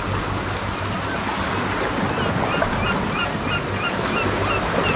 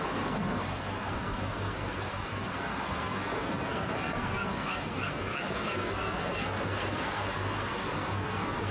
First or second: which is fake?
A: second